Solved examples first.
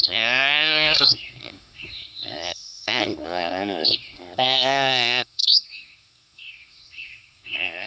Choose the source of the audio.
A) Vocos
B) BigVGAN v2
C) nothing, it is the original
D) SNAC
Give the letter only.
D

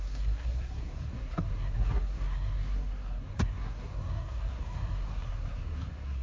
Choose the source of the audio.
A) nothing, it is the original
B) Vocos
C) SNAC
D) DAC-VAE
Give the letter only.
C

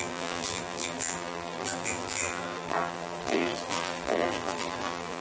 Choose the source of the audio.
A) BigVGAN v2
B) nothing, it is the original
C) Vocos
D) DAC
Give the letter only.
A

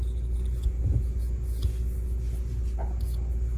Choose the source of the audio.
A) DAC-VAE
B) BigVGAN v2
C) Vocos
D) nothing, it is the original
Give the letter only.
D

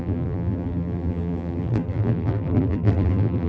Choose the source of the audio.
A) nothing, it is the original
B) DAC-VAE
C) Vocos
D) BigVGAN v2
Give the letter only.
D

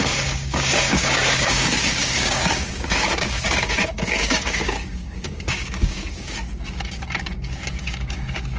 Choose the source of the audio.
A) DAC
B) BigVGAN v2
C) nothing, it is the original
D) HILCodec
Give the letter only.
A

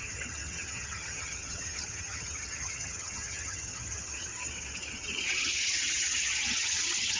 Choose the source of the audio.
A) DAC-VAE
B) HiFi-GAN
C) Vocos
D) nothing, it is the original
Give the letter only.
B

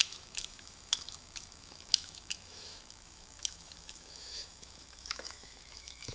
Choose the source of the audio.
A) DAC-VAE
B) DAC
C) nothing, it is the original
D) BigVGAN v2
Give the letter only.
A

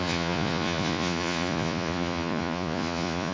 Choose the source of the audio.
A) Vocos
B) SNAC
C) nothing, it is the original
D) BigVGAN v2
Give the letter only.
A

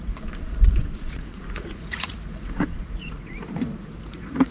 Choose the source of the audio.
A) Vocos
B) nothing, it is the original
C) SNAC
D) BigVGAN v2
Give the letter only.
A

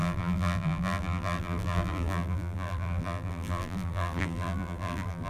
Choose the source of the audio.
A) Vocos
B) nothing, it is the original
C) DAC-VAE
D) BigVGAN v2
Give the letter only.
D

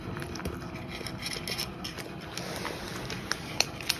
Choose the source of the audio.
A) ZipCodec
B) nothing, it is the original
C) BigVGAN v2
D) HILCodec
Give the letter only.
B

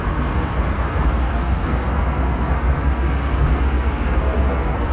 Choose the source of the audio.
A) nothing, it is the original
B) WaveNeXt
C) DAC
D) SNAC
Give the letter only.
D